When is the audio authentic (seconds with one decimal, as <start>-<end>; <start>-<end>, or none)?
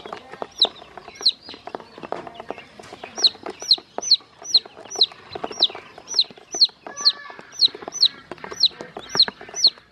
0.0-1.0; 1.8-2.9; 4.1-4.8; 8.9-9.9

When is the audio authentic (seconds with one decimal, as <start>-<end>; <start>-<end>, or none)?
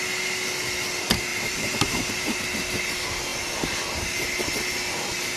0.0-1.3; 2.4-5.4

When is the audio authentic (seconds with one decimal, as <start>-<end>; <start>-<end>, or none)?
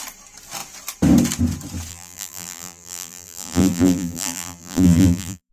0.0-1.9